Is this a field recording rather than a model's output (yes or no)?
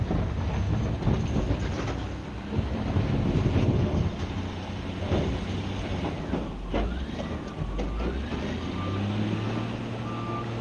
yes